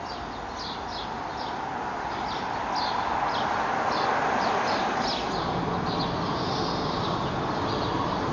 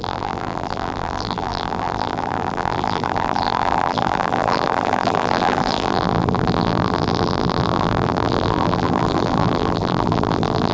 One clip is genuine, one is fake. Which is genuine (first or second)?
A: first